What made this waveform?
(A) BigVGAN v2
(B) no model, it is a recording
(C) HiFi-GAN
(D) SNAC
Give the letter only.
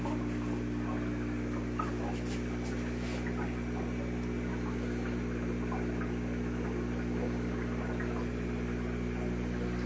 B